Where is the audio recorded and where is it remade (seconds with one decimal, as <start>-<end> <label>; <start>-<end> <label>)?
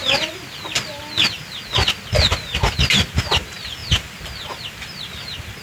0.0-3.4 recorded; 3.4-5.6 remade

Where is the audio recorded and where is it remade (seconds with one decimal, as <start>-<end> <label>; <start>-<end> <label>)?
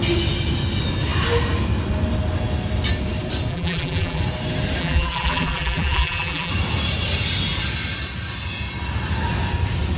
0.0-3.5 recorded; 3.5-4.2 remade; 4.2-4.8 recorded; 4.8-6.5 remade; 6.5-10.0 recorded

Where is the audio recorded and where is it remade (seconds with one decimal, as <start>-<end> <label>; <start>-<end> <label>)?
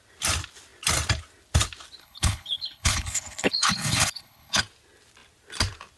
0.0-2.0 recorded; 2.0-4.6 remade; 4.6-6.0 recorded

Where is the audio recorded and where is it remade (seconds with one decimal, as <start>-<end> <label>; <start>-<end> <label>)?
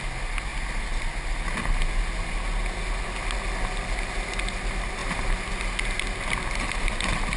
0.0-7.4 recorded